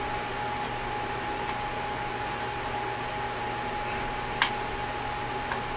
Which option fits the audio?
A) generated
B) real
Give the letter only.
B